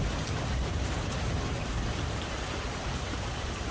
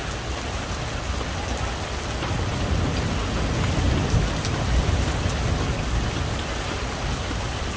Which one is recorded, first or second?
second